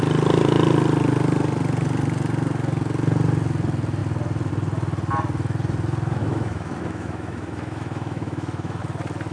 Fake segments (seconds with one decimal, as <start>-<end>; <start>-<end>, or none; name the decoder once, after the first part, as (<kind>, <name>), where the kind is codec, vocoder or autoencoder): 6.2-8.8 (autoencoder, DAC-VAE)